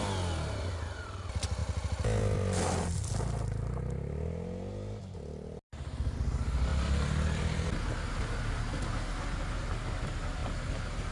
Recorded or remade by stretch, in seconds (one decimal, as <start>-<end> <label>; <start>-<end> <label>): 0.0-11.1 recorded